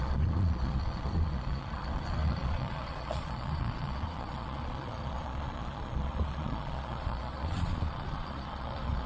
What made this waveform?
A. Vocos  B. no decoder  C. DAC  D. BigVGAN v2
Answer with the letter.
A